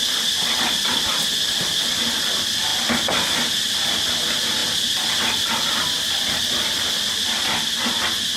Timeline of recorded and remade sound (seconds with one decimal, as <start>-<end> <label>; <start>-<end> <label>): 0.0-0.7 remade; 0.7-8.4 recorded